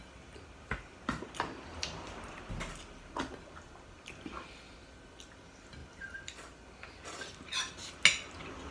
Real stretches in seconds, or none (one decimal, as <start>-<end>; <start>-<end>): 0.0-8.7